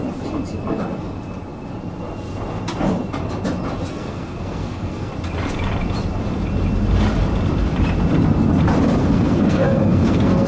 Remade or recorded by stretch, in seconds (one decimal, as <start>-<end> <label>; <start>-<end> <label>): 0.0-3.9 recorded; 3.9-5.1 remade; 5.1-9.0 recorded; 9.0-10.5 remade